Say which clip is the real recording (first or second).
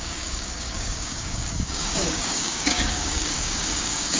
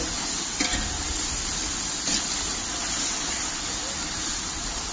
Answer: second